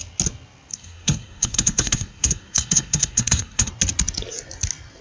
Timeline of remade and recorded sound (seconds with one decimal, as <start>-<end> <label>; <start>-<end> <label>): 0.0-0.7 recorded; 0.7-3.7 remade; 3.7-5.0 recorded